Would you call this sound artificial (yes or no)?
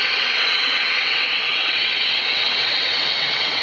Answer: yes